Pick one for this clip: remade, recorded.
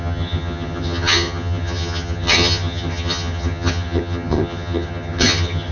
remade